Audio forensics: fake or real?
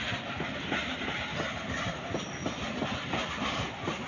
real